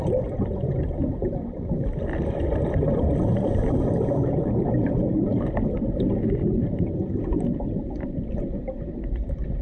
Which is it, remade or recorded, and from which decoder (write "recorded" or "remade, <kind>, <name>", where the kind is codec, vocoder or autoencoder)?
remade, vocoder, BigVGAN v2